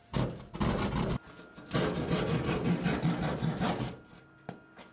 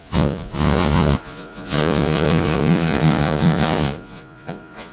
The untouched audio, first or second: first